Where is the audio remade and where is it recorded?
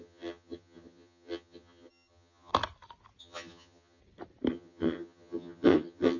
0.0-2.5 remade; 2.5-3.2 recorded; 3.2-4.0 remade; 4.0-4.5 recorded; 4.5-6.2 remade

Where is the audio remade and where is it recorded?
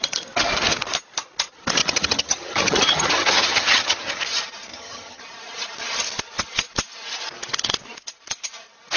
0.0-1.8 recorded; 1.8-4.2 remade; 4.2-4.7 recorded; 4.7-5.2 remade; 5.2-9.0 recorded